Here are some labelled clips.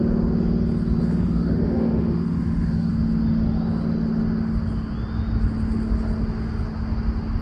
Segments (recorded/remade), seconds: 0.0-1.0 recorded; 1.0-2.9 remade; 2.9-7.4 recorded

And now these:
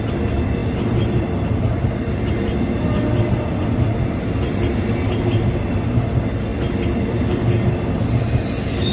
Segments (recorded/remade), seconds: 0.0-8.9 recorded

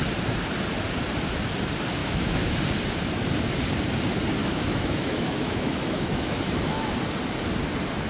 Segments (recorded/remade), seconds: 0.0-2.0 recorded; 2.0-2.6 remade; 2.6-4.4 recorded; 4.4-6.9 remade; 6.9-8.1 recorded

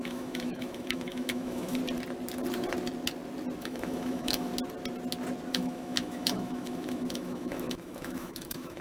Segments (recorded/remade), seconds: 0.0-1.8 remade; 1.8-3.6 recorded; 3.6-4.5 remade; 4.5-5.5 recorded; 5.5-8.8 remade

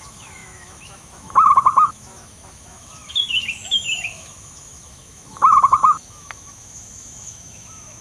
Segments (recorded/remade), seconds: 0.0-8.0 remade